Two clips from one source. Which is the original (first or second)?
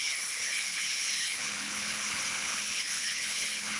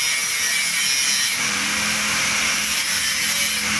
second